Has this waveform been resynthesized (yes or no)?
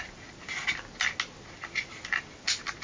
no